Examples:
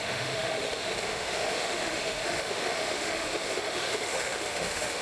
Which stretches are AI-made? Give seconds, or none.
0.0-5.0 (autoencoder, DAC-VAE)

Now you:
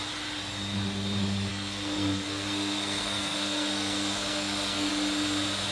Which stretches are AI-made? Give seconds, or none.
1.5-4.9 (codec, SNAC)

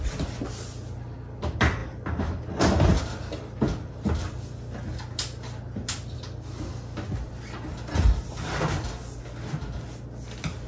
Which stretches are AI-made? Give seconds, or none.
none

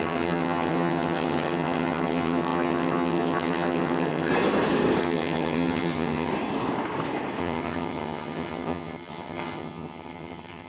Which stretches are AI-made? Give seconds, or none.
0.0-4.3 (vocoder, HiFi-GAN); 5.0-6.3; 7.4-10.7

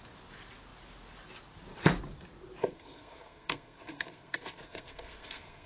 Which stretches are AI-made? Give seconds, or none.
2.6-5.7 (codec, SNAC)

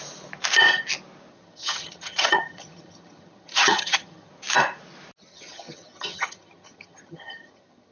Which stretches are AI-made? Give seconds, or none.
1.3-4.3 (vocoder, HiFi-GAN); 5.3-7.9

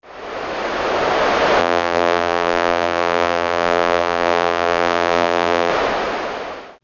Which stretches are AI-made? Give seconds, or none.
1.6-5.7 (vocoder, BigVGAN v2)